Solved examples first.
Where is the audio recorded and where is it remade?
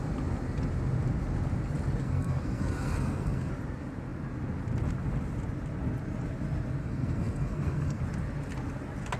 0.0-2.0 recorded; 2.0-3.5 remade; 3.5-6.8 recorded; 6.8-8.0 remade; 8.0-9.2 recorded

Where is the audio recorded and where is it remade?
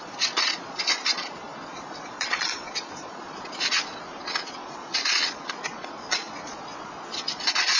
0.0-7.8 remade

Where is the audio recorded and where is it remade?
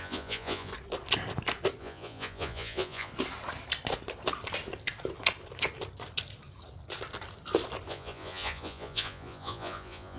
0.0-0.7 remade; 0.7-1.8 recorded; 1.8-3.1 remade; 3.1-7.9 recorded; 7.9-10.2 remade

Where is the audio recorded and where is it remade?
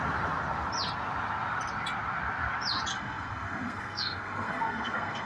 0.0-2.9 recorded; 2.9-5.3 remade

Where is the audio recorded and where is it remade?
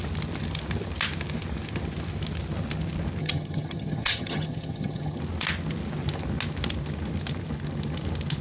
0.0-3.2 recorded; 3.2-5.2 remade; 5.2-8.4 recorded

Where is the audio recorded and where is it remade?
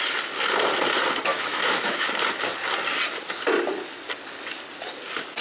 0.0-1.3 recorded; 1.3-2.1 remade; 2.1-5.4 recorded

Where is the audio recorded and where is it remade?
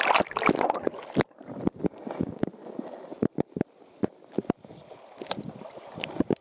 0.0-6.4 recorded